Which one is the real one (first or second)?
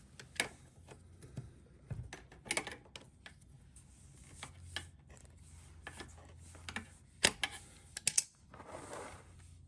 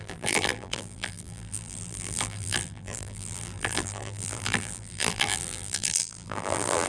first